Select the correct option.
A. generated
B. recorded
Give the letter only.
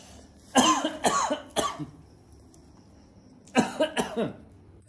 B